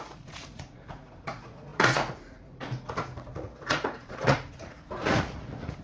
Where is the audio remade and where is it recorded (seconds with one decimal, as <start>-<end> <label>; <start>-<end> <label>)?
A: 0.0-5.8 remade